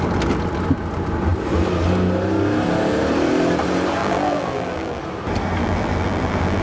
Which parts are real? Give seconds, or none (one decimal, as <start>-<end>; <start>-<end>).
0.0-4.0; 5.0-5.6